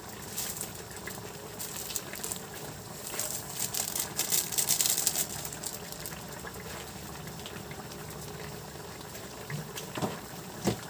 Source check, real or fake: fake